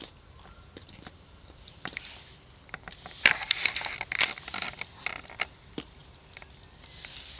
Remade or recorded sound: remade